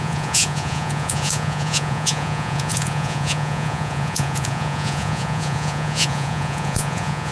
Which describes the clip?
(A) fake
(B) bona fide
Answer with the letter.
A